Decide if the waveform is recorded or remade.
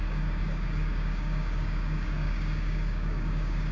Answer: remade